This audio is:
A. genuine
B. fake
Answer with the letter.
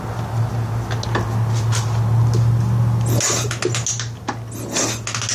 A